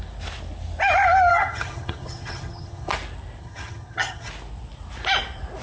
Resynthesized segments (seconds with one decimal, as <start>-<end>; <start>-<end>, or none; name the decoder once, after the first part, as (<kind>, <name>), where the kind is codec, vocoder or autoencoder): 1.3-2.9 (vocoder, HiFi-GAN); 3.4-4.3

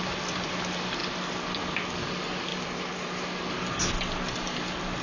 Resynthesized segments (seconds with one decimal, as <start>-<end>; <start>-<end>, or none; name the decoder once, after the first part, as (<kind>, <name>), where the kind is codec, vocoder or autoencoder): none

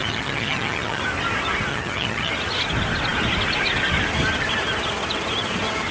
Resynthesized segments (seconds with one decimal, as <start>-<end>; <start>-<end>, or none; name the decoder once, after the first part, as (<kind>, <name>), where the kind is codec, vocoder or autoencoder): 0.0-1.0 (vocoder, HiFi-GAN); 1.7-2.3